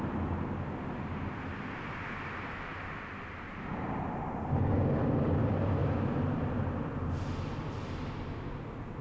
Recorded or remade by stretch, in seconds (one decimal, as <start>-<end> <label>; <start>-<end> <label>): 0.0-9.0 recorded